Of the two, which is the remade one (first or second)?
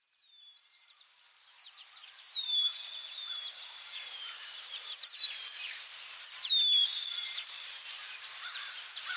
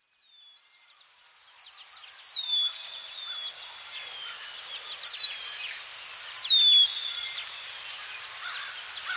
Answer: first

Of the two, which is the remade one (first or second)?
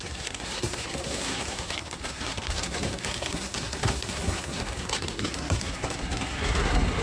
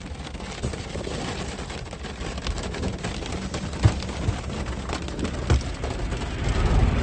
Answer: first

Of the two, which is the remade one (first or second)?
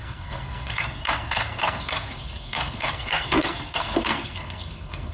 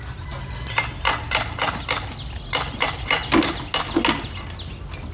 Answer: first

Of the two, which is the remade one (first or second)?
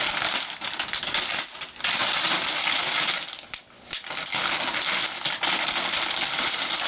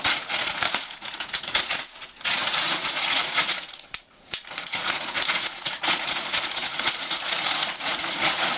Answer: second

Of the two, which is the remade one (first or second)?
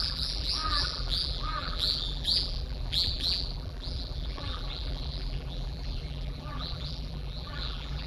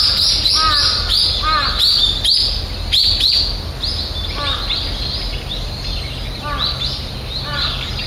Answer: first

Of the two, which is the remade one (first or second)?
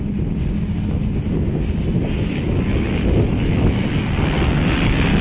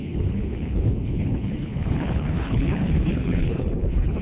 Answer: second